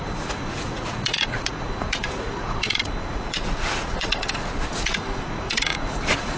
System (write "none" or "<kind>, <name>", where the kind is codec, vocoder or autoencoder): vocoder, Vocos